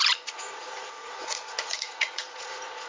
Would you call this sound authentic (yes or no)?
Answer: no